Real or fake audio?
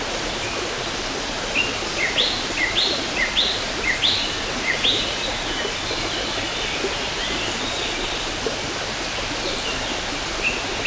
real